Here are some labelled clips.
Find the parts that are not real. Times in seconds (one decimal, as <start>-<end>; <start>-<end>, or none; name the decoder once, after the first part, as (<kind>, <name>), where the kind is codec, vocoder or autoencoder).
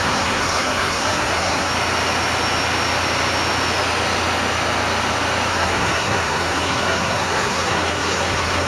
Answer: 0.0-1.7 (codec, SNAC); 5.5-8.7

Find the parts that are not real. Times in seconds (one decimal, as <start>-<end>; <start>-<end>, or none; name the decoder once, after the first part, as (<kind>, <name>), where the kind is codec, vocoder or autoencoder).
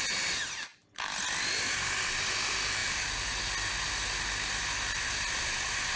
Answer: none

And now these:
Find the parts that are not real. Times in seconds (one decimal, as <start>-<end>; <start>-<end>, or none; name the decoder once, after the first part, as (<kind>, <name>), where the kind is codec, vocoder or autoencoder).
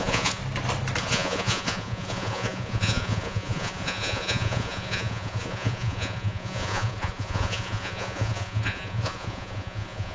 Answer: 0.0-0.4 (vocoder, Vocos); 1.0-10.1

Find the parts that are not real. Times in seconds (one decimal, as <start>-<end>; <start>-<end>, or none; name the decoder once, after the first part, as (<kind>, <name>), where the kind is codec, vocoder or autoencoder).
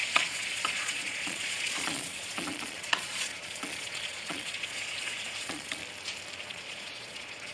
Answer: 0.0-5.8 (vocoder, Vocos); 6.4-7.5